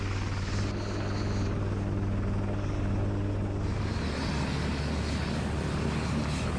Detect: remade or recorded recorded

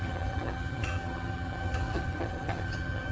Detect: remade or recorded remade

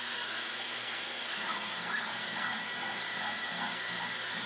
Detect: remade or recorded remade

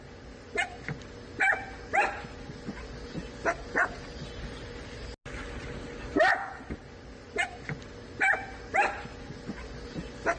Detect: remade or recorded recorded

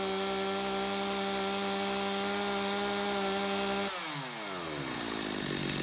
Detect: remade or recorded recorded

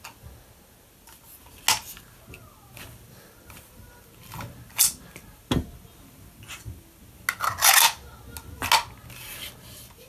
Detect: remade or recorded recorded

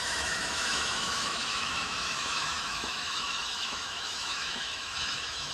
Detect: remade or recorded remade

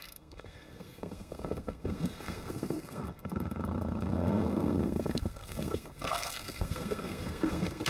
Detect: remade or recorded remade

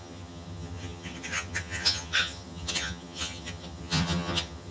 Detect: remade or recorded remade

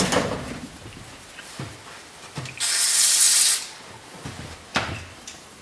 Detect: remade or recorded recorded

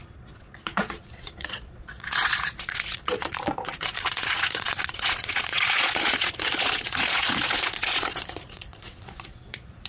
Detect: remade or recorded remade